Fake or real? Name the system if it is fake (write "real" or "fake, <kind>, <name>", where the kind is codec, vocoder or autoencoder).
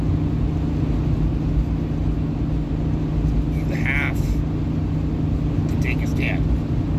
real